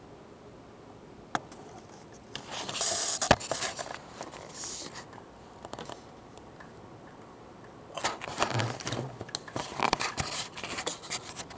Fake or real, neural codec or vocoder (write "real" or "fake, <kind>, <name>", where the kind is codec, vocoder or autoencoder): real